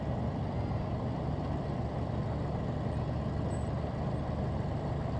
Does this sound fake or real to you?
real